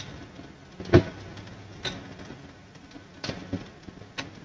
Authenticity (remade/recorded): recorded